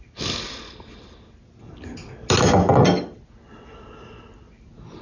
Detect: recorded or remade recorded